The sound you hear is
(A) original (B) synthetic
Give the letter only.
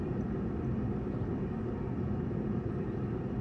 A